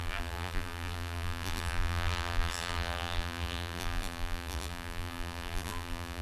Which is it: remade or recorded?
remade